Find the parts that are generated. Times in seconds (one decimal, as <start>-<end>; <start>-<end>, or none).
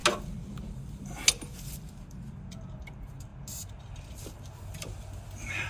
none